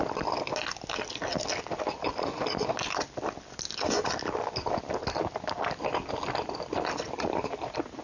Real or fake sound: real